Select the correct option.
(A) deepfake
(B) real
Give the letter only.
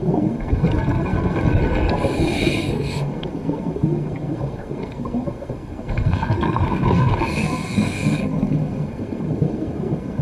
A